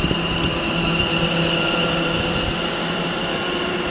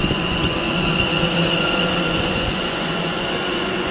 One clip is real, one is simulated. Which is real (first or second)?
first